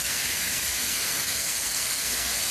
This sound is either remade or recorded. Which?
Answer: remade